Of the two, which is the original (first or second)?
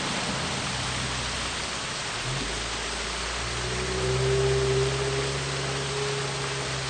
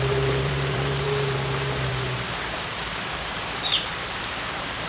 first